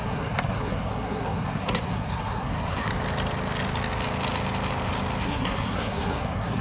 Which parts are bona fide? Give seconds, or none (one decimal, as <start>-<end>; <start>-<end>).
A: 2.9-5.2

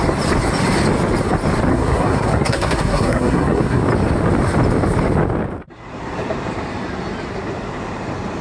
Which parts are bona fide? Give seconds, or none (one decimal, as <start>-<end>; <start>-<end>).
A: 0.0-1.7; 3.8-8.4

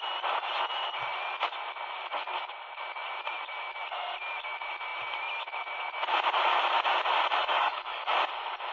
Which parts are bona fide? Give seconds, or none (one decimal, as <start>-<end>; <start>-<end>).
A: 0.0-7.4; 8.0-8.7

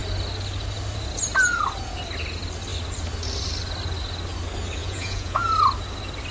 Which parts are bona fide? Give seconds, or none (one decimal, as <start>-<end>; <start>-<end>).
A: 0.0-4.8; 5.4-6.3